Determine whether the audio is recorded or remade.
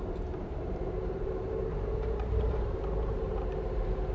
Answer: remade